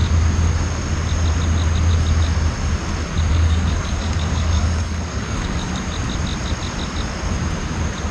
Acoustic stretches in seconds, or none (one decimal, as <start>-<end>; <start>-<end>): 0.0-3.3; 5.7-8.1